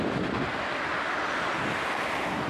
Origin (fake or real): real